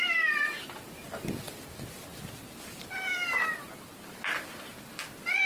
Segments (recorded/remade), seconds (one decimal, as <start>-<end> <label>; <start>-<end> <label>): 0.0-5.5 recorded